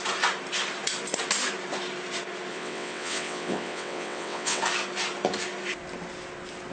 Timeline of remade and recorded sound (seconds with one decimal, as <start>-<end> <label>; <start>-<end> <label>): 0.0-2.5 recorded; 2.5-4.6 remade; 4.6-6.7 recorded